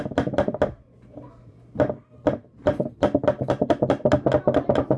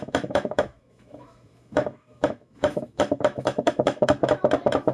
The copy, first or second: second